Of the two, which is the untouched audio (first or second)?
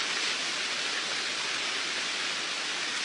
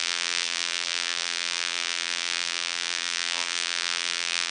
first